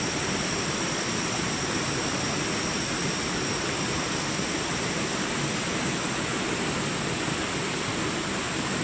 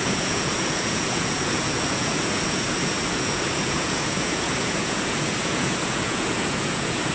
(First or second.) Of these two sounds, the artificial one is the second